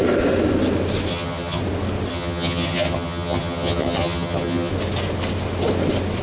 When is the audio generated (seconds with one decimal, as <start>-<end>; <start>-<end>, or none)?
1.1-1.6; 2.1-4.7